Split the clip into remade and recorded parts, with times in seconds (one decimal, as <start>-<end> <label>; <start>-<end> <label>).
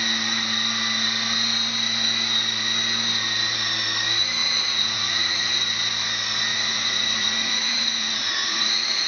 0.0-4.4 recorded; 4.4-5.5 remade; 5.5-6.5 recorded; 6.5-9.1 remade